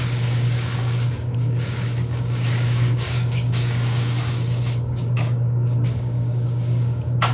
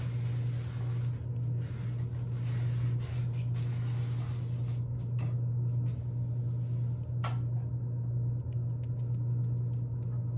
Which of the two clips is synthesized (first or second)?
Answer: first